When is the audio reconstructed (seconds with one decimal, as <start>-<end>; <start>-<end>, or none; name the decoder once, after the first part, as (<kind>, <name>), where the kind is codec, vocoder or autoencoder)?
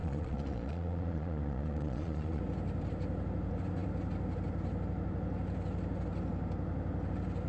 0.0-2.4 (vocoder, Vocos)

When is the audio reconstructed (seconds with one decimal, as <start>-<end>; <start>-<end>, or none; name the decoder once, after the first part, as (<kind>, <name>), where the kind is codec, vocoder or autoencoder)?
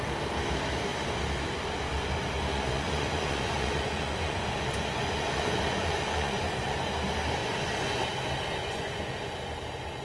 2.5-6.9 (vocoder, Vocos); 7.4-8.0; 8.6-9.1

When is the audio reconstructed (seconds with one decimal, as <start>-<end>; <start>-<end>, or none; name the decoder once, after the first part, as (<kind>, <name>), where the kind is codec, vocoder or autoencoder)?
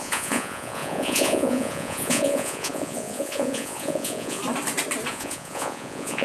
0.0-4.4 (vocoder, Vocos); 5.1-6.2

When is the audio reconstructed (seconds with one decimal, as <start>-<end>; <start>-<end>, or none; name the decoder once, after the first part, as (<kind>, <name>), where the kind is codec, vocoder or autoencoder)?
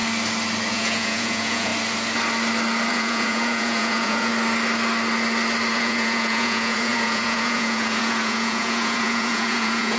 0.7-1.7 (vocoder, Vocos); 2.9-4.3; 5.7-10.0